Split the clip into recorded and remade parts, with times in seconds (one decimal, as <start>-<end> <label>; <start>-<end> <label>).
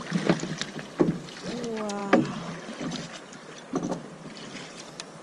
0.0-5.2 recorded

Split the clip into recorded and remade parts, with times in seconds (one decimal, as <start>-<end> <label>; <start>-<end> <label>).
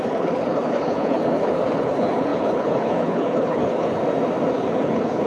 0.0-4.0 remade; 4.0-4.5 recorded; 4.5-5.3 remade